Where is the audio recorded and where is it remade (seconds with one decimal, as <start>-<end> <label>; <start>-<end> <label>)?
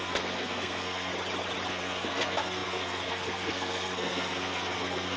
0.0-1.1 remade; 1.1-1.7 recorded; 1.7-5.2 remade